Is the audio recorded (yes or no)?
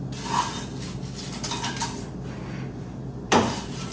yes